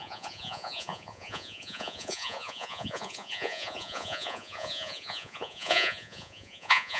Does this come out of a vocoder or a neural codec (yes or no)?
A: yes